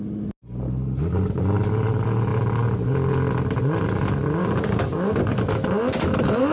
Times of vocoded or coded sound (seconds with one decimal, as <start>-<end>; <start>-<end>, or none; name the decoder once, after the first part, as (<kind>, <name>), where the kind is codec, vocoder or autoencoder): 4.4-5.2 (codec, DAC)